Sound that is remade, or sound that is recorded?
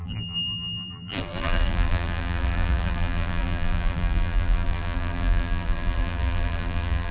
remade